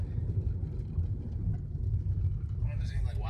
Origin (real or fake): real